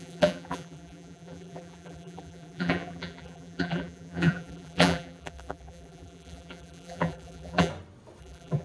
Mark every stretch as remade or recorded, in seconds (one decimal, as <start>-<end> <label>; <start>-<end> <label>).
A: 0.0-7.7 remade; 7.7-8.2 recorded; 8.2-8.6 remade